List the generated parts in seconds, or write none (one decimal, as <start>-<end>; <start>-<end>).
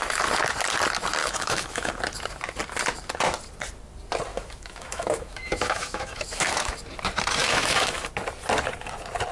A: 1.2-1.9; 4.3-6.7; 7.4-8.1